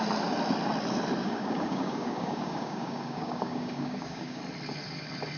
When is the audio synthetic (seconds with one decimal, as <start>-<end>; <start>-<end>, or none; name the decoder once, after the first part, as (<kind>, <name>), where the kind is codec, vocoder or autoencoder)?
1.2-4.4 (codec, DAC)